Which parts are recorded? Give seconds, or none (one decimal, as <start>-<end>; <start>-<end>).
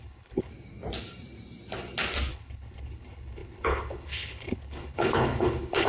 0.5-2.3